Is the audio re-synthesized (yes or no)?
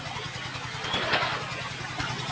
no